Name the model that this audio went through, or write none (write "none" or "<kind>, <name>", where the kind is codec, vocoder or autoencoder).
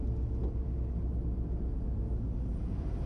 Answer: none